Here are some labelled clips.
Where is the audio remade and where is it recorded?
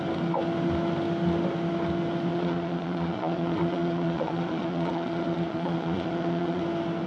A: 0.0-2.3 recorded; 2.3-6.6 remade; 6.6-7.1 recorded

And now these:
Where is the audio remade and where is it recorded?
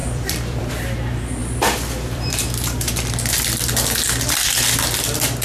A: 0.0-0.7 remade; 0.7-1.4 recorded; 1.4-2.9 remade; 2.9-5.4 recorded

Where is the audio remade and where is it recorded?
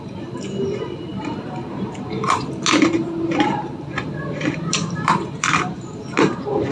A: 0.0-1.1 recorded; 1.1-2.6 remade; 2.6-3.0 recorded; 3.0-6.7 remade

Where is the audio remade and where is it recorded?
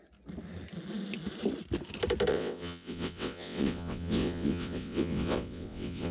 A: 0.0-2.3 recorded; 2.3-6.1 remade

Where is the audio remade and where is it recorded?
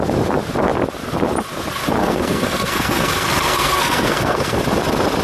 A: 0.0-2.0 recorded; 2.0-4.6 remade; 4.6-5.2 recorded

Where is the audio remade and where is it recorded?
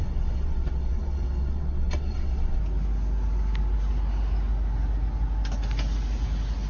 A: 0.0-2.6 remade; 2.6-6.7 recorded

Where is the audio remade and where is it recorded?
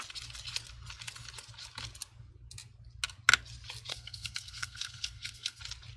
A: 0.0-3.9 recorded; 3.9-5.6 remade; 5.6-6.0 recorded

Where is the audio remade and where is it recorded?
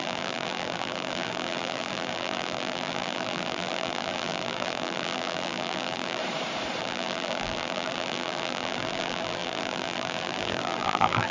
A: 0.0-6.2 remade; 6.2-6.8 recorded; 6.8-11.3 remade